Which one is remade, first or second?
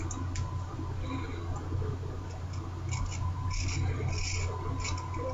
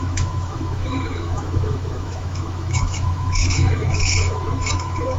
second